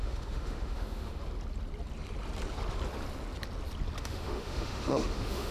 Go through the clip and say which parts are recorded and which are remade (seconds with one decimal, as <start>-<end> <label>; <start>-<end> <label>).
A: 0.0-1.2 remade; 1.2-4.0 recorded; 4.0-5.5 remade